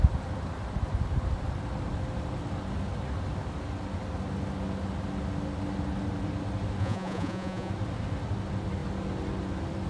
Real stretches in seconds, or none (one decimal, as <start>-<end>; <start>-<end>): 0.0-6.8; 7.7-9.9

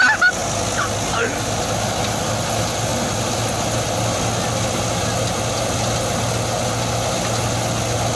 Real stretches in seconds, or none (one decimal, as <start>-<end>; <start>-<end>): 0.0-8.2

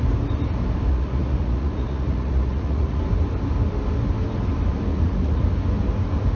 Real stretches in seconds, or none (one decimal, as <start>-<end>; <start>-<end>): 0.0-0.9; 3.0-4.9; 5.4-6.3

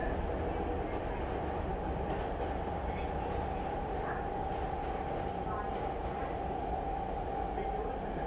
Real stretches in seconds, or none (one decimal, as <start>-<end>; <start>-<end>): 0.0-8.3

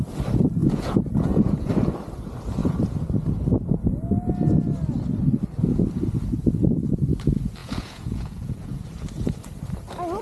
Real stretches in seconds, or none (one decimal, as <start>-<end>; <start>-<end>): 0.0-0.6; 1.7-7.6; 8.9-10.2

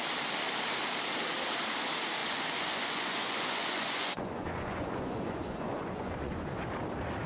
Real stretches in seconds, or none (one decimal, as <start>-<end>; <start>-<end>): 0.0-2.2; 6.6-7.3

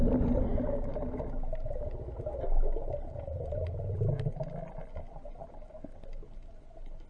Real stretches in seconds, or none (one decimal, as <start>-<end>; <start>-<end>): 0.0-7.1